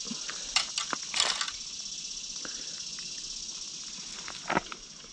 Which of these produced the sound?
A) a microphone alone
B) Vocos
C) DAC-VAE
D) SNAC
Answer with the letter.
A